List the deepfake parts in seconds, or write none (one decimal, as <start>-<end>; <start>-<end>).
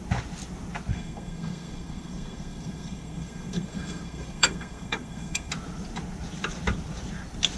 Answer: 0.9-5.5